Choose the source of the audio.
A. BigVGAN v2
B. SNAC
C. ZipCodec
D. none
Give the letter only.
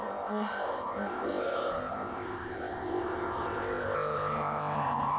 C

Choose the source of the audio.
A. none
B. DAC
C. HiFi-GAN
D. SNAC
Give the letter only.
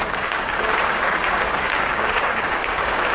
B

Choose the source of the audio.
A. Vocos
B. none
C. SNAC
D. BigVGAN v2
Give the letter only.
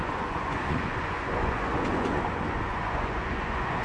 A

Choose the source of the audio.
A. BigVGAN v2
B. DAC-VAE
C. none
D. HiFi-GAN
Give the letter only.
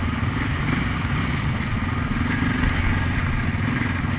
C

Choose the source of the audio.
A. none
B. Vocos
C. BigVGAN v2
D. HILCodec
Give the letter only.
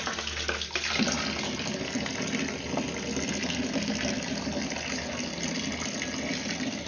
A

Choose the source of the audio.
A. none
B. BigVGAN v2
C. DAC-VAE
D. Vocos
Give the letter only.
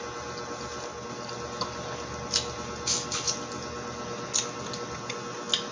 A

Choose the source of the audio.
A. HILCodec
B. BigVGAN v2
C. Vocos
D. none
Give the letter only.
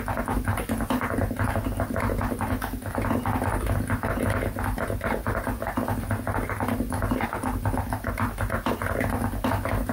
D